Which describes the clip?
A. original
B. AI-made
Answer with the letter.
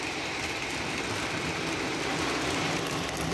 A